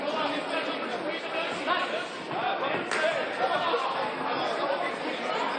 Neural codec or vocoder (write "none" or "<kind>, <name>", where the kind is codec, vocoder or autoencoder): none